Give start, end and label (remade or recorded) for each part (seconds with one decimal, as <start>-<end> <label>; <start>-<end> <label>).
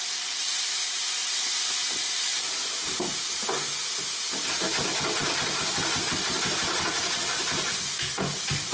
0.0-8.7 recorded